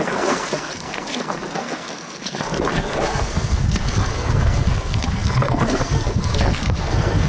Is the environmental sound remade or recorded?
remade